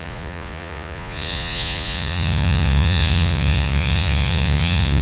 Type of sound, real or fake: fake